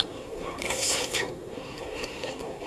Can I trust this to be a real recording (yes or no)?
no